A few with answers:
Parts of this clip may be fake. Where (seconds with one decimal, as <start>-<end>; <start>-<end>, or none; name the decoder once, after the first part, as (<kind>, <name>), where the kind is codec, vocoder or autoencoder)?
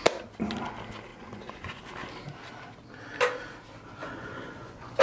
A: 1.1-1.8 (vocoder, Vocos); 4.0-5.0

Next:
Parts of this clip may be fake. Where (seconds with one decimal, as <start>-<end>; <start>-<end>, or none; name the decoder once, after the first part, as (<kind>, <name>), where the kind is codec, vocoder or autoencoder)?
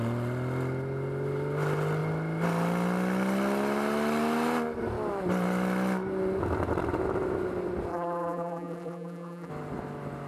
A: 7.9-9.5 (vocoder, BigVGAN v2)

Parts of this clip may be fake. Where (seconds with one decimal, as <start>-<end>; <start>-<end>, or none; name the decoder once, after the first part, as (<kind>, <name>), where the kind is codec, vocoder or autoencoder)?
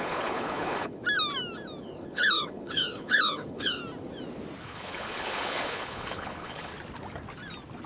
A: 0.0-1.0 (codec, HILCodec); 1.8-3.8; 4.6-6.7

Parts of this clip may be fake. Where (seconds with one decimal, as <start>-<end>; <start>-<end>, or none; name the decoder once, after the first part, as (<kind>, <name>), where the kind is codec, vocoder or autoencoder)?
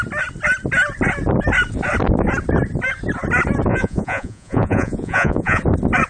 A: 3.7-5.6 (vocoder, Vocos)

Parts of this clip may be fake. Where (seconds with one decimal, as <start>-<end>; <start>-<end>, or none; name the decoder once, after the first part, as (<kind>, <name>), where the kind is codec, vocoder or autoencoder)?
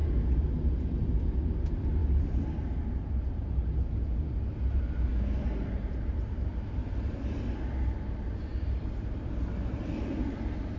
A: none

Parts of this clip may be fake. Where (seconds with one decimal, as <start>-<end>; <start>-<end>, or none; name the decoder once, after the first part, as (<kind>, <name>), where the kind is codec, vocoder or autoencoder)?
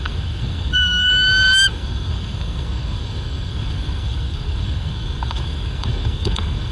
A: 0.0-1.1 (codec, SNAC); 1.7-6.7